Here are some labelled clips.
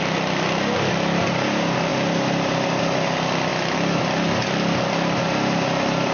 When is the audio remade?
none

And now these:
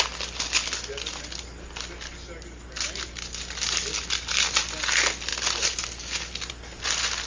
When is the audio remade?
none

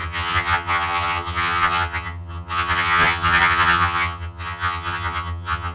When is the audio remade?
0.0-5.7 (vocoder, HiFi-GAN)

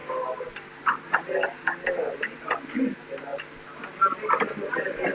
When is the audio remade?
none